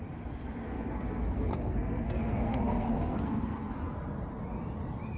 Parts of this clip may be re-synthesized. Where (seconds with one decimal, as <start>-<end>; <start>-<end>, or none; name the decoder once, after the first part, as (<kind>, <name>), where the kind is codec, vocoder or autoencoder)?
0.6-3.7 (codec, SNAC)